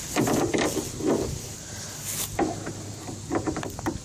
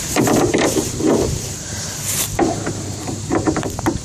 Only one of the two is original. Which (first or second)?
first